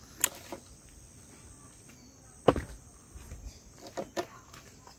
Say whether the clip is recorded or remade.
recorded